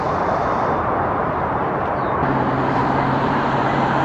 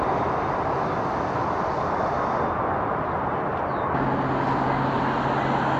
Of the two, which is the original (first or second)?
second